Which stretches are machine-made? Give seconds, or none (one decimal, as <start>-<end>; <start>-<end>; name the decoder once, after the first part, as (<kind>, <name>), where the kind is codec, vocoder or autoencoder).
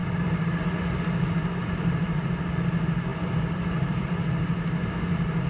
0.0-0.6 (vocoder, BigVGAN v2); 1.6-2.4; 3.1-4.3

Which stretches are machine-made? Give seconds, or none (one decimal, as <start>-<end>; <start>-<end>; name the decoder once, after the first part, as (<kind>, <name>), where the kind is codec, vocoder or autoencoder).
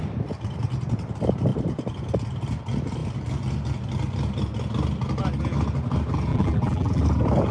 6.3-7.0 (vocoder, BigVGAN v2)